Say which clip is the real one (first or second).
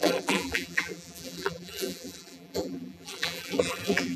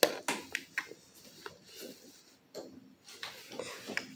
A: second